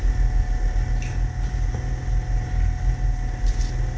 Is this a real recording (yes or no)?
yes